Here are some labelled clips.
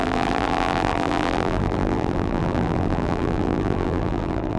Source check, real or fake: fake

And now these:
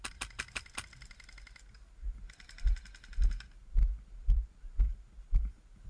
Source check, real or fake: real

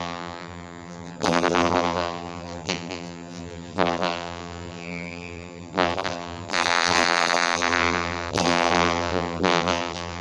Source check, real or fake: fake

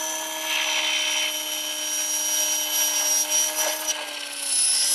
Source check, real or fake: real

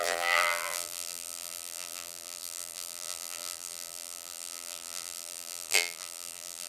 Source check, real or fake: fake